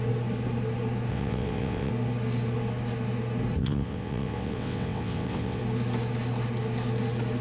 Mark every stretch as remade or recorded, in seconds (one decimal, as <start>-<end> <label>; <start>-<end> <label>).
0.0-1.1 recorded; 1.1-1.9 remade; 1.9-3.6 recorded; 3.6-5.6 remade; 5.6-7.4 recorded